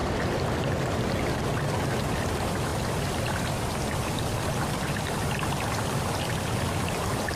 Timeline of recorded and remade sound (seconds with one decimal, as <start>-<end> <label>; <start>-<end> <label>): 0.0-7.4 recorded